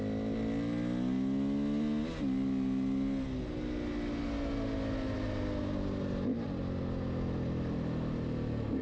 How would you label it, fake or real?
real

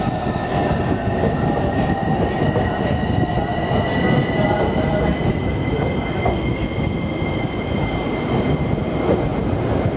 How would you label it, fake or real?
real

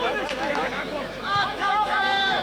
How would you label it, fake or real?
fake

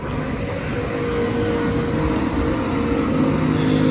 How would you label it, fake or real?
real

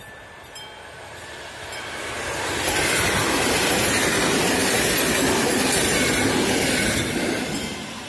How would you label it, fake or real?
real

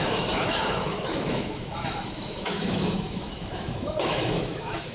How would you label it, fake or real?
fake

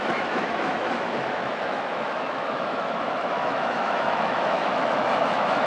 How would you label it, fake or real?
fake